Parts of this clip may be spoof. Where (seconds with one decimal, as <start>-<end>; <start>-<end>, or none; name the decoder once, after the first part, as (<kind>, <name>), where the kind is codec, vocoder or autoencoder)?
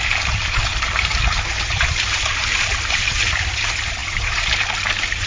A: 0.0-5.3 (vocoder, BigVGAN v2)